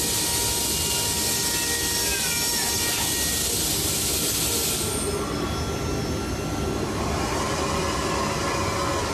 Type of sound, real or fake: real